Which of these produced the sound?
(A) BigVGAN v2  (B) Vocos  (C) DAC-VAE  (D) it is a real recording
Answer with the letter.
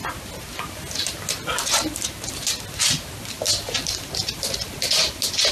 D